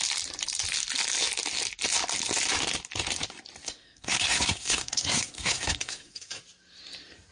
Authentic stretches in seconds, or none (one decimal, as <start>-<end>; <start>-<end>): 0.0-3.6; 6.4-7.3